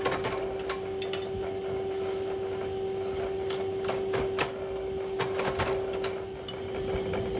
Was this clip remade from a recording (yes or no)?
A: no